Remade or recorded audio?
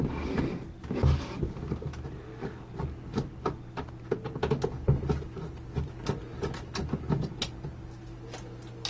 recorded